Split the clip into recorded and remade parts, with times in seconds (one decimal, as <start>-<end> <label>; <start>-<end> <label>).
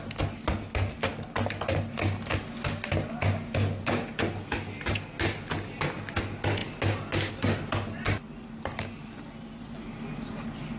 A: 0.0-10.8 recorded